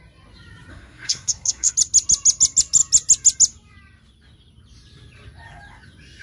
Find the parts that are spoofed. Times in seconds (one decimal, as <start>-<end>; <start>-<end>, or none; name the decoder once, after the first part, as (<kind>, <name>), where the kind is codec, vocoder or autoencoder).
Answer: 0.7-1.7 (codec, SNAC)